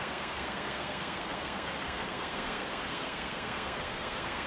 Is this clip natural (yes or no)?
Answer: no